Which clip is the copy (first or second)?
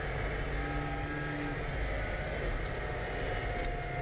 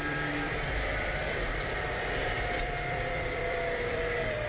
second